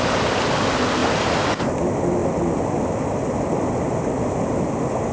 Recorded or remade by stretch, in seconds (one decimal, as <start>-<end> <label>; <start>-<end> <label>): 0.0-5.1 recorded